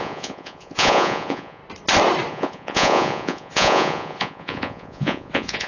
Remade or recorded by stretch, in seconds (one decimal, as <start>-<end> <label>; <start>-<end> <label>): 0.0-1.6 remade; 1.6-2.3 recorded; 2.3-5.7 remade